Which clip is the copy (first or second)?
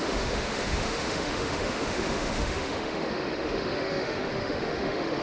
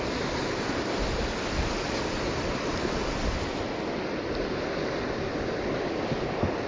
first